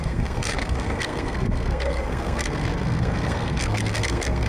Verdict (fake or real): fake